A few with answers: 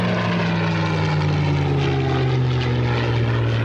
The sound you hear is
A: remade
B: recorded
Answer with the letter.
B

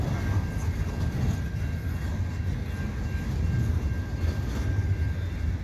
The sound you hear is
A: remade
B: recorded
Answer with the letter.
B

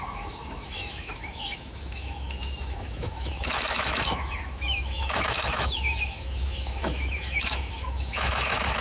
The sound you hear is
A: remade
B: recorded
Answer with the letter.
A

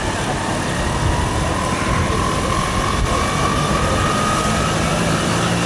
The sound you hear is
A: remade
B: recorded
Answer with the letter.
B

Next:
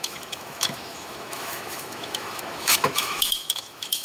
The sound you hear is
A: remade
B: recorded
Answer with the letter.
A